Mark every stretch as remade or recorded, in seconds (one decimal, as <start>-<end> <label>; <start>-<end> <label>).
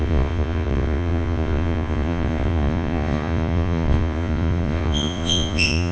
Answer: 0.0-5.9 remade